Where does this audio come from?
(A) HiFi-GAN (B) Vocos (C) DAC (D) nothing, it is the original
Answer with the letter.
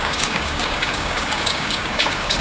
C